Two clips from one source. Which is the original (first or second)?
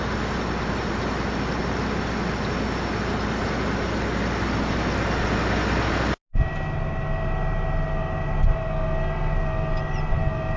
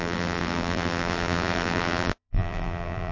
first